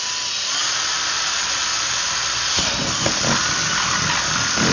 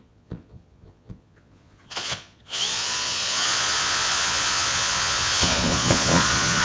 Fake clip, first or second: second